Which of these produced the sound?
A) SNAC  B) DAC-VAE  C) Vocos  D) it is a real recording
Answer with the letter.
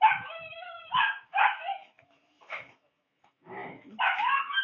B